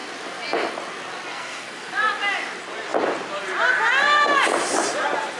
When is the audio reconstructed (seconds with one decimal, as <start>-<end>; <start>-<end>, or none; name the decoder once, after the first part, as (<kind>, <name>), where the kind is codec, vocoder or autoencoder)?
1.3-1.9 (codec, SNAC)